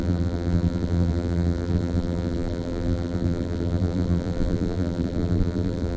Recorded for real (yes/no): no